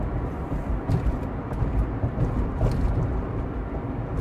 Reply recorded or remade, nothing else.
recorded